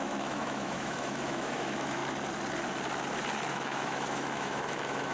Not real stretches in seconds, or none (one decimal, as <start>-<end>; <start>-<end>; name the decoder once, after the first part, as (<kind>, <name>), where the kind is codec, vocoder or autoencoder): 0.0-2.0 (autoencoder, DAC-VAE); 3.5-5.1